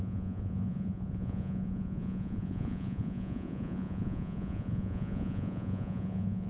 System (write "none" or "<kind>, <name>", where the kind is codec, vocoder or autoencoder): vocoder, Vocos